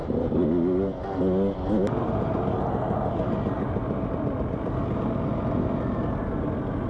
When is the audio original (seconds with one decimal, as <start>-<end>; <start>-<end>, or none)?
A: 0.0-6.9